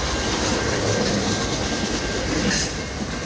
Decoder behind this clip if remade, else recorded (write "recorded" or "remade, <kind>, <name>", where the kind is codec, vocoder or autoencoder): remade, vocoder, BigVGAN v2